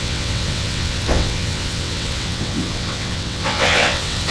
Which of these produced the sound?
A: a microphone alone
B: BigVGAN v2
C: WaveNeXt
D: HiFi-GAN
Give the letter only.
C